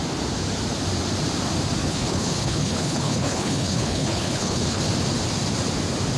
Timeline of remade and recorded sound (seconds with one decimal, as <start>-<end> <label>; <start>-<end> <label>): 0.0-1.8 recorded; 1.8-4.8 remade; 4.8-6.2 recorded